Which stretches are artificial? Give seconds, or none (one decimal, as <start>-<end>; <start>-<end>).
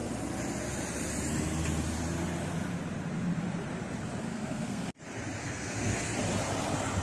4.3-5.0; 5.4-6.1